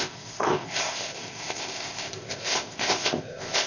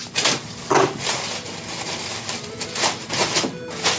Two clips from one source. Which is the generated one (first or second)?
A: first